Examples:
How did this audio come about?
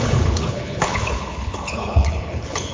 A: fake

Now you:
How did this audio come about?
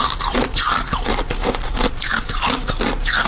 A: real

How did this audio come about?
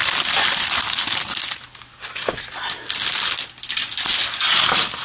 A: real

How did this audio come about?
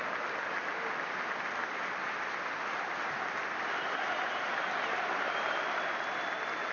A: real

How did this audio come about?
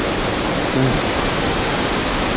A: real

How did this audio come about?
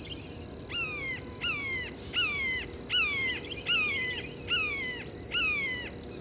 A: real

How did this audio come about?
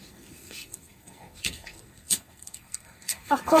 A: fake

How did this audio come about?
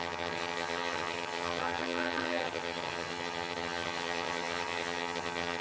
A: fake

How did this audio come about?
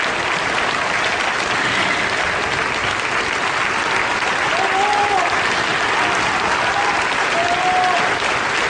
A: real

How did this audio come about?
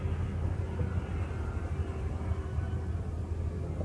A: real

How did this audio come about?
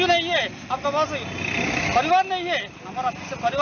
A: real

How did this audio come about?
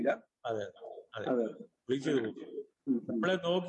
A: real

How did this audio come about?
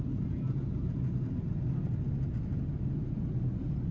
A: real